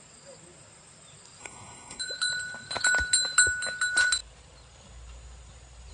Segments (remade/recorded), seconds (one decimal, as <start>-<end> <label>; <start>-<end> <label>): 0.0-1.4 recorded; 1.4-2.0 remade; 2.0-5.9 recorded